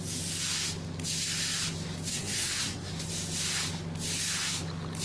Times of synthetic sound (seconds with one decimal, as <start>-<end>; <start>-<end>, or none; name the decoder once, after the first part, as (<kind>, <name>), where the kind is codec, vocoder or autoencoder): 2.1-2.9 (codec, SNAC)